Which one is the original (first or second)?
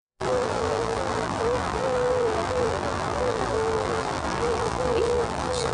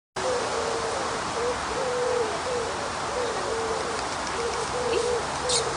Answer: second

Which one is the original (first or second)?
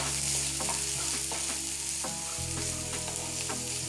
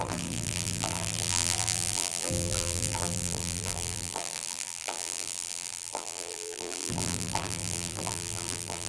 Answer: first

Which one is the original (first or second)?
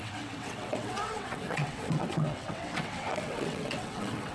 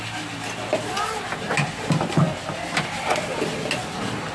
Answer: second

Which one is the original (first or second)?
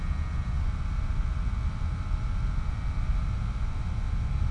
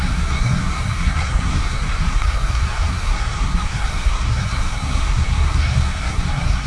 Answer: first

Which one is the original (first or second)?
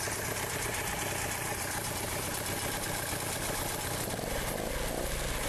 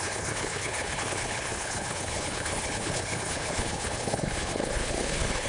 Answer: first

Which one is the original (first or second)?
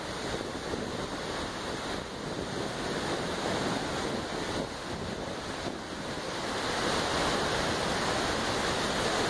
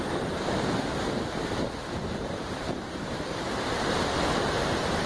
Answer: first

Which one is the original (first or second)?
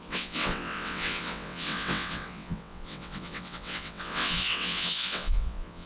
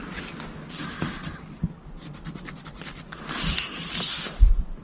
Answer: second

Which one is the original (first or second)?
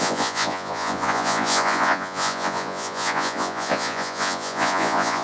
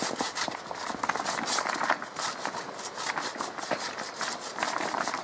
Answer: second